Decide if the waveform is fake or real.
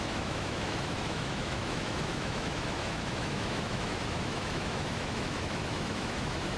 fake